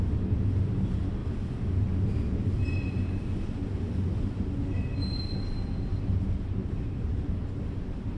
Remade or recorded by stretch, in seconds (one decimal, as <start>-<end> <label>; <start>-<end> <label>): 0.0-8.2 recorded